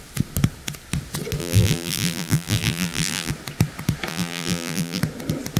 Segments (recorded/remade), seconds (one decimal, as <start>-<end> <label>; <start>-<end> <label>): 0.0-1.4 recorded; 1.4-3.3 remade; 3.3-4.1 recorded; 4.1-5.0 remade; 5.0-5.6 recorded